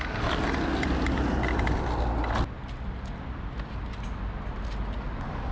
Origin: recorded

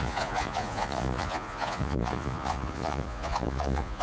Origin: remade